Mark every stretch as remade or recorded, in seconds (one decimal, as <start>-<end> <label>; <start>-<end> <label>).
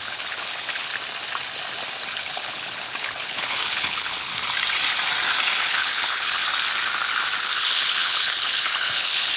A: 0.0-0.9 remade; 0.9-2.2 recorded; 2.2-4.3 remade; 4.3-5.6 recorded; 5.6-6.4 remade; 6.4-7.4 recorded; 7.4-9.4 remade